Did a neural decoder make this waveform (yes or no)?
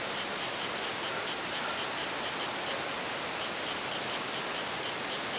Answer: no